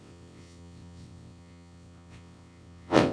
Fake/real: fake